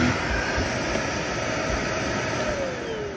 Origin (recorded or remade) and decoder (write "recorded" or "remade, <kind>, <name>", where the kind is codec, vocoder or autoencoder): recorded